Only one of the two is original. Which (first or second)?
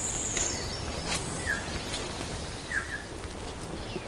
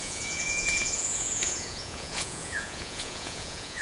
first